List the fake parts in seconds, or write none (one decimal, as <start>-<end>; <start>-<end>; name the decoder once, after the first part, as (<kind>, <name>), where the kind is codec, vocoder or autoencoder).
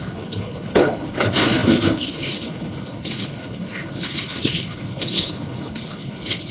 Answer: 0.0-6.5 (codec, HILCodec)